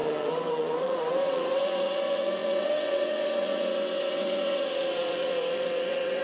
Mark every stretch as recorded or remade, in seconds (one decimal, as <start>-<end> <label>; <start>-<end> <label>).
0.0-6.2 remade